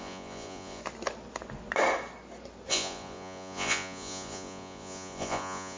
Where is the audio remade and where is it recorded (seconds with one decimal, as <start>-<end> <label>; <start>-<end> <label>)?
0.0-0.8 remade; 0.8-2.7 recorded; 2.7-5.8 remade